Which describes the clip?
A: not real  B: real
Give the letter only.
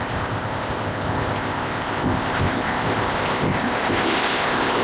A